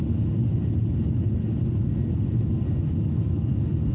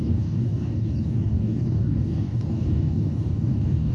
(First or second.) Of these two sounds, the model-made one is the second